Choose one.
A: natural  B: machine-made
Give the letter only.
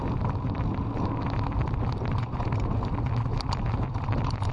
A